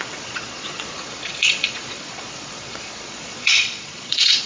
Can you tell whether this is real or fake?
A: fake